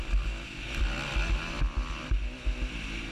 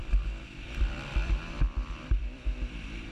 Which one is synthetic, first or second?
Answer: second